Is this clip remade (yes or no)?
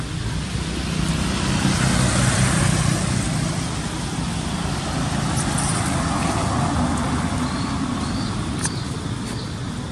no